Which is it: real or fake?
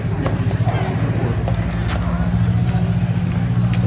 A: real